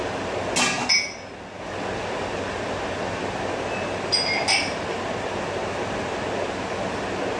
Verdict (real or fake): real